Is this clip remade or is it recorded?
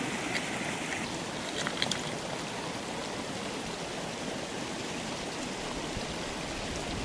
recorded